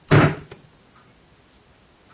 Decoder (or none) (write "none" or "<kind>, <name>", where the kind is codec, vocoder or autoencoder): none